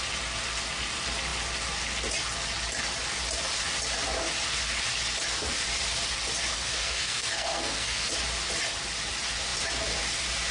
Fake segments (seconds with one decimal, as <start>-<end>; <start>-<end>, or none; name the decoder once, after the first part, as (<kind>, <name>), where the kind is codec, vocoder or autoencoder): 6.5-8.1 (codec, SNAC)